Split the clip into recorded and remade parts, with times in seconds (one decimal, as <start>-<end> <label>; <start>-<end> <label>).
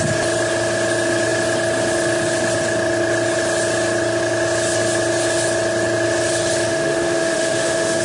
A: 0.0-6.7 recorded; 6.7-8.0 remade